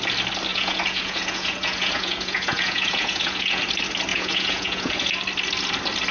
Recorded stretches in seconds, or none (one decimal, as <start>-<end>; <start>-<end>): 0.0-0.5; 3.6-4.1; 5.1-6.1